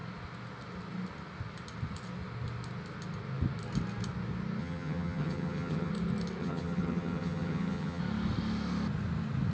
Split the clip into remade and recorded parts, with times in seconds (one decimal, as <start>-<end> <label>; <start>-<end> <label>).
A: 0.0-4.6 recorded; 4.6-5.9 remade; 5.9-6.4 recorded; 6.4-8.0 remade; 8.0-9.5 recorded